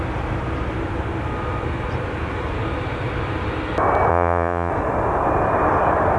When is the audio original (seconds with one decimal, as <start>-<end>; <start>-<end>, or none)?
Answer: 0.0-4.1; 4.7-6.2

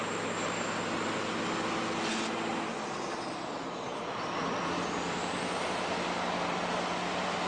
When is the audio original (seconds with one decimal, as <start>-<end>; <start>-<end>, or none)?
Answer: 0.0-7.5

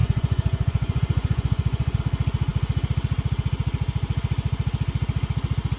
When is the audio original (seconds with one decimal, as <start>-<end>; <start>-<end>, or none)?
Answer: 2.0-5.8

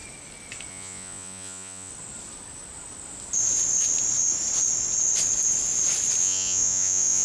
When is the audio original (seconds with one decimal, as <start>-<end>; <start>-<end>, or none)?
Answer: 0.0-0.7; 1.9-6.2

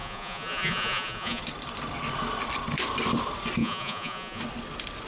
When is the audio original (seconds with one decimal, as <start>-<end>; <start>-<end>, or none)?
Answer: 1.4-3.6; 4.4-5.1

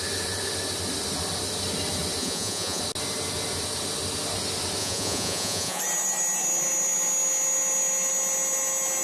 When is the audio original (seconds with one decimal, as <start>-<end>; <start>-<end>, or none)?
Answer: 0.0-2.2; 2.8-4.8; 5.8-9.0